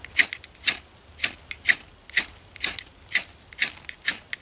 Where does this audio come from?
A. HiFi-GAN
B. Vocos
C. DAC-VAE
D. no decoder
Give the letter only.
D